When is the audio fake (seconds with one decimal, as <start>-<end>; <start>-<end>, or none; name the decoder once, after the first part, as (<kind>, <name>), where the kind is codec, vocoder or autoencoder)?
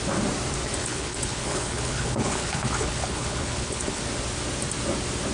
0.8-4.0 (codec, HILCodec)